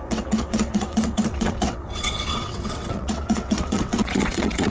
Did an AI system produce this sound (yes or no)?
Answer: yes